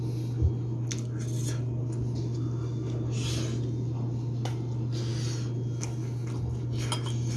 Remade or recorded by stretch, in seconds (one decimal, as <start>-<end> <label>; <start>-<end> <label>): 0.0-7.4 recorded